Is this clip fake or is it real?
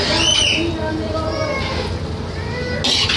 real